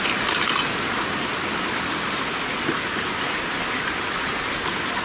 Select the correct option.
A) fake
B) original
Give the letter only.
B